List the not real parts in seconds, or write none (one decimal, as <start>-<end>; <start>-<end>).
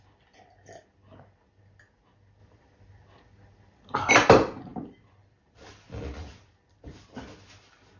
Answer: 4.7-5.4